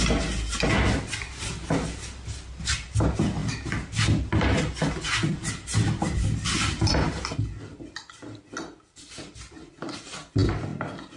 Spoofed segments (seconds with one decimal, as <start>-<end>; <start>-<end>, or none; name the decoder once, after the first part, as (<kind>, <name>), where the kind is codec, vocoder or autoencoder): none

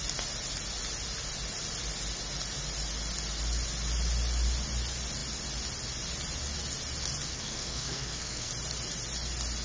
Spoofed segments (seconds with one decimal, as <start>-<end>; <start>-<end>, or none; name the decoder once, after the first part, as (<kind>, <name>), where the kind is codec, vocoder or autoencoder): 7.3-8.5 (codec, SNAC)